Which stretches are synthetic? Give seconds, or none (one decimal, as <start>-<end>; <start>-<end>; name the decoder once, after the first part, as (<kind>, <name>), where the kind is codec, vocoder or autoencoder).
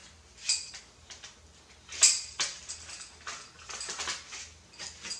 none